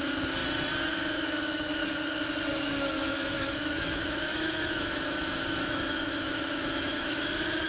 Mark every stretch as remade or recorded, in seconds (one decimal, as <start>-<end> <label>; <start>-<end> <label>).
0.0-0.4 remade; 0.4-0.9 recorded; 0.9-1.8 remade; 1.8-2.5 recorded; 2.5-7.7 remade